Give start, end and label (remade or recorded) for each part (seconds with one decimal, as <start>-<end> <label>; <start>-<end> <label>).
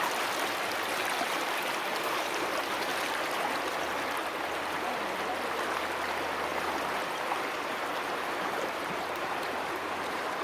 0.0-1.9 recorded; 1.9-2.5 remade; 2.5-6.5 recorded; 6.5-10.4 remade